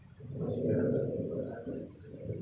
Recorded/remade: recorded